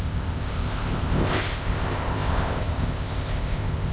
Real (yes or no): no